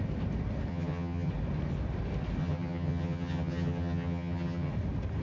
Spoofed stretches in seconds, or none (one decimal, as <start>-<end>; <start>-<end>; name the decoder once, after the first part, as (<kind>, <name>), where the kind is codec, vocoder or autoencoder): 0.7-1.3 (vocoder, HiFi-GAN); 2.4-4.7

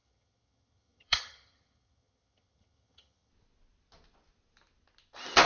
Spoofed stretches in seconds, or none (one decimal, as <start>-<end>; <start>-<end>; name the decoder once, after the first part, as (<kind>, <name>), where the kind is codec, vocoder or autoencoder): 0.0-3.3 (vocoder, HiFi-GAN)

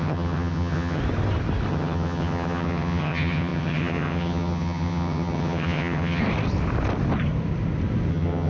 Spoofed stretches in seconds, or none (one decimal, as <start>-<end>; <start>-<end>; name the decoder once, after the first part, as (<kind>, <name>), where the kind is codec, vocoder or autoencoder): 0.0-1.0 (vocoder, HiFi-GAN); 1.7-6.2; 8.1-8.5